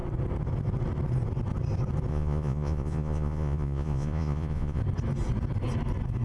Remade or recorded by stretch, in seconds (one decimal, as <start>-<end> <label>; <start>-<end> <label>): 0.0-2.1 recorded; 2.1-4.8 remade; 4.8-6.2 recorded